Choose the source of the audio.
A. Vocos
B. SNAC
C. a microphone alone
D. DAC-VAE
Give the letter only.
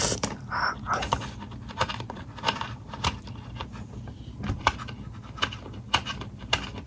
C